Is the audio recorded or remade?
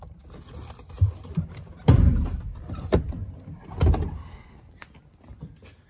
recorded